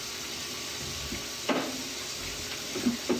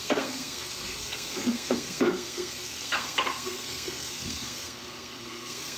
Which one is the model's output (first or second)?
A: second